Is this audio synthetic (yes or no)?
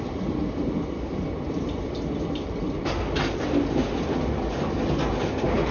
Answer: no